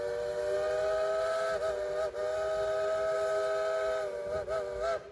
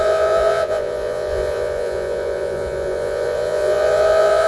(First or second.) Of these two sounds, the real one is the first